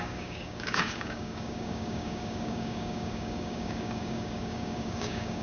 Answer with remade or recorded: remade